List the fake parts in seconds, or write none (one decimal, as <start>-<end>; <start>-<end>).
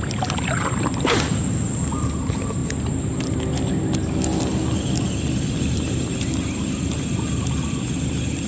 none